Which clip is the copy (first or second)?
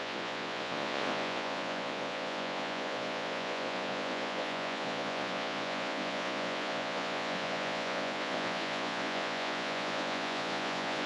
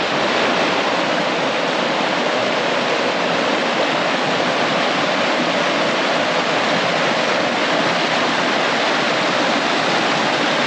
first